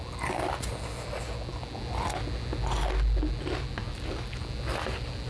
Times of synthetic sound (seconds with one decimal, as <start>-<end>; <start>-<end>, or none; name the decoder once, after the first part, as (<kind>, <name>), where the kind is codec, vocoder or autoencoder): none